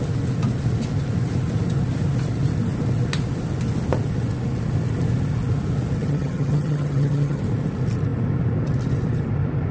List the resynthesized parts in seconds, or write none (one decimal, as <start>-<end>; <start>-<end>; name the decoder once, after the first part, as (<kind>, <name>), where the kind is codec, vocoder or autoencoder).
6.0-7.4 (vocoder, HiFi-GAN)